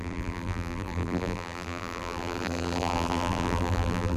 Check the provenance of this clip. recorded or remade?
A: remade